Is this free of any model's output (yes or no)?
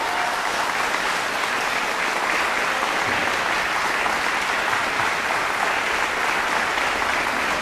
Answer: yes